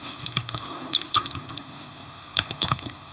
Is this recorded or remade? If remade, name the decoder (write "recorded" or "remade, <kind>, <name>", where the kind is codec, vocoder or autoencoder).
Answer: remade, codec, SNAC